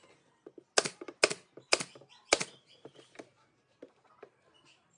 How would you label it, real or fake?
real